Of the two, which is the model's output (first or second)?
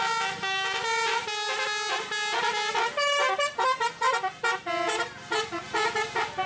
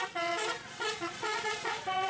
second